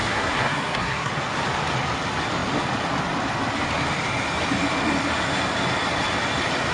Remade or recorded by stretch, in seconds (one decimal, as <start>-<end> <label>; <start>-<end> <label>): 0.0-1.1 remade; 1.1-6.7 recorded